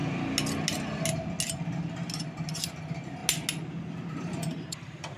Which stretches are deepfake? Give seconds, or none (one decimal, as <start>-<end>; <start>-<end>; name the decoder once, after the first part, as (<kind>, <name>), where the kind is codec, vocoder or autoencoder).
2.5-3.2 (vocoder, BigVGAN v2); 3.8-5.2